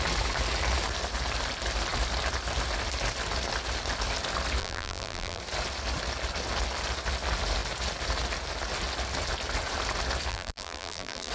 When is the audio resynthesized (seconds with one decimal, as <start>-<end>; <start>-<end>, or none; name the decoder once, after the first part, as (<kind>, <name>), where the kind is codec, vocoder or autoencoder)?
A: 4.6-5.4 (vocoder, BigVGAN v2); 10.3-11.3

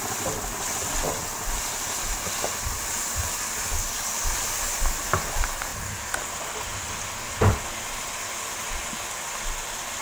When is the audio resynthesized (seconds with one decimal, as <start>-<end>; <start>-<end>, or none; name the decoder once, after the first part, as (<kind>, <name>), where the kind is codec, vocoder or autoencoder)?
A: none

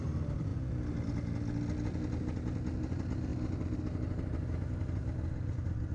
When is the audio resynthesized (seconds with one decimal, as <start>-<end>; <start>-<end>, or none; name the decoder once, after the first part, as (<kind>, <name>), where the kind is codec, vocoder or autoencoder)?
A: 0.0-0.5 (vocoder, BigVGAN v2); 2.8-3.3; 5.5-5.9